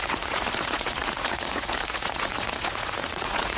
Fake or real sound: fake